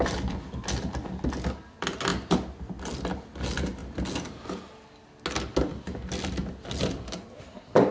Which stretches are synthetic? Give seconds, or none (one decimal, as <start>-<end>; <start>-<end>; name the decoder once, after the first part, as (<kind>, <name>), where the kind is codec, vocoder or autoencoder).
none